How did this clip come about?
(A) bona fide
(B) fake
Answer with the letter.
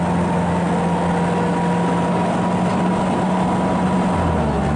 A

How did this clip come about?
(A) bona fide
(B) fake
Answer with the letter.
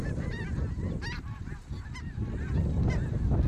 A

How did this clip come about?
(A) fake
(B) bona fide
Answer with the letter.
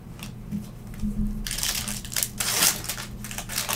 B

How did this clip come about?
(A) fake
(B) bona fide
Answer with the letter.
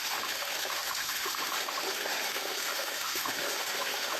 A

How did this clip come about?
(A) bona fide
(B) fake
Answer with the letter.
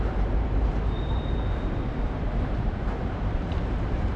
B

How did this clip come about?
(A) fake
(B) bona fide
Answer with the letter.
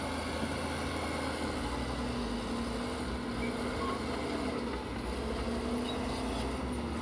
B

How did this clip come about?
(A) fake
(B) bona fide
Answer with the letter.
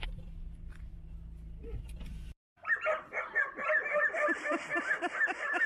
A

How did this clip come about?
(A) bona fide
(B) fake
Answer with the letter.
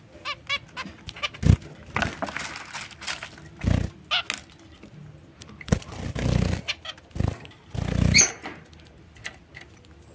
A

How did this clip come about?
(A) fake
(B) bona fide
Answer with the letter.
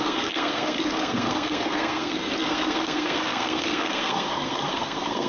A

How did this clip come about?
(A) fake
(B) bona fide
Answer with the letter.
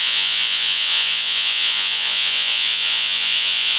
A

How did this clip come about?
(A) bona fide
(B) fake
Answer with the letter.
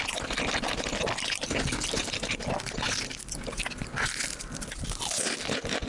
A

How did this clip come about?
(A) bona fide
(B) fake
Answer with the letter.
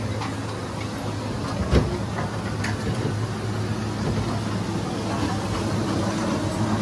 A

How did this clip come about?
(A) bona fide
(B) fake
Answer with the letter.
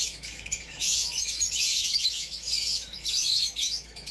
B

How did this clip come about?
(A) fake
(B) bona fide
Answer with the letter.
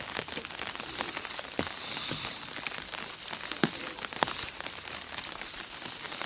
B